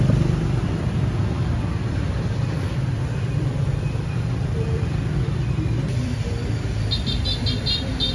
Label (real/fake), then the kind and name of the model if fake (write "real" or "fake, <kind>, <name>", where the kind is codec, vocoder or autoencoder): fake, vocoder, BigVGAN v2